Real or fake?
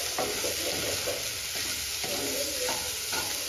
real